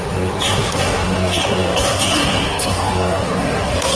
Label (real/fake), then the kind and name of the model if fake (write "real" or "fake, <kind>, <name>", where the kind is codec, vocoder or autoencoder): fake, codec, SNAC